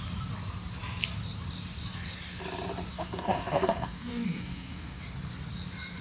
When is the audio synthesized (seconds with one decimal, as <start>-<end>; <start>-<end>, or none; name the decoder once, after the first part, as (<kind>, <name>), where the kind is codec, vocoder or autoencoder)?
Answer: 2.9-5.0 (codec, SNAC)